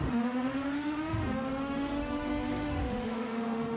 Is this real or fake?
fake